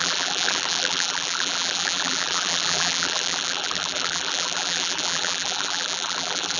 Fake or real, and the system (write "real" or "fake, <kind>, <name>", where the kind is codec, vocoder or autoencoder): fake, vocoder, BigVGAN v2